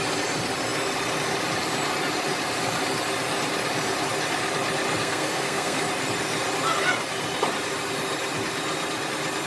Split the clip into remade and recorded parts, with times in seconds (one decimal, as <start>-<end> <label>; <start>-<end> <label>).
0.0-5.0 recorded; 5.0-5.8 remade; 5.8-9.5 recorded